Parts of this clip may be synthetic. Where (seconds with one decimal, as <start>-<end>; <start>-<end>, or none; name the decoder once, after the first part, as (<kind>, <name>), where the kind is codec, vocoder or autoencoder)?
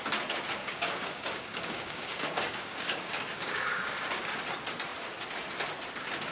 0.6-4.4 (codec, DAC)